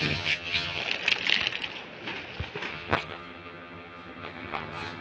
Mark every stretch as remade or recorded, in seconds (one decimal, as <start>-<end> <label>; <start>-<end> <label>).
0.0-0.8 remade; 0.8-2.7 recorded; 2.7-5.0 remade